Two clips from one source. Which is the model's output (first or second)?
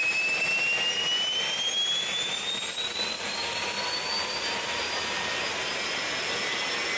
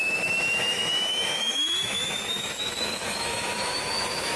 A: second